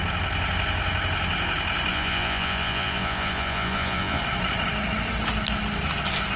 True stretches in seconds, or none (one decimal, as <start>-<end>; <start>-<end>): 0.0-1.9; 4.2-6.4